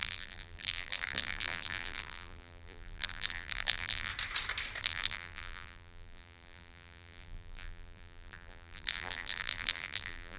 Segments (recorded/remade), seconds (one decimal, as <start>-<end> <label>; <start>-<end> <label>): 0.0-4.1 remade; 4.1-4.8 recorded; 4.8-10.4 remade